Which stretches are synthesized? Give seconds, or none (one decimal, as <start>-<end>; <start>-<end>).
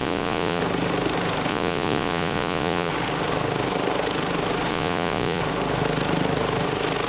0.0-0.6; 1.5-2.9; 4.7-5.4